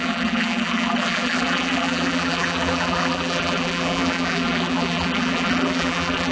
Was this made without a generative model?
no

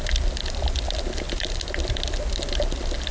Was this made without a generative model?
yes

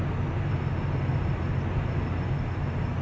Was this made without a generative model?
yes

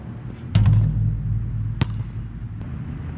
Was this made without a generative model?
yes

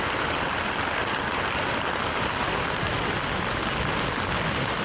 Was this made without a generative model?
yes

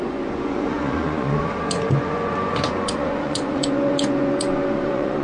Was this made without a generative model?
no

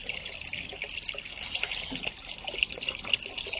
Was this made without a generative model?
yes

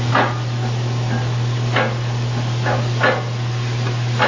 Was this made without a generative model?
yes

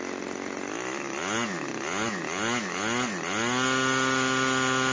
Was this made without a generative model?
yes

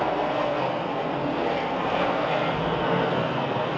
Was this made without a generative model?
no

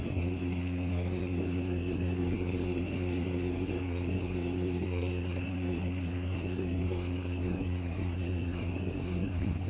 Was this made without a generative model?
no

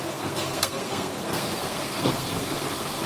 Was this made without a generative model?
no